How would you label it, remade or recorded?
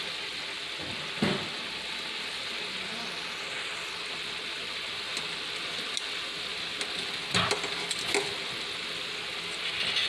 recorded